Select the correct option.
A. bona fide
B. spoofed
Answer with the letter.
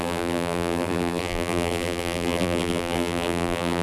B